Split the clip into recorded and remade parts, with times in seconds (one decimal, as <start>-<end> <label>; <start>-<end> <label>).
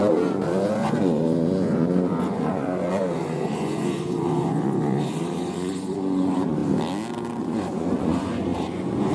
0.0-6.6 remade; 6.6-7.4 recorded; 7.4-9.1 remade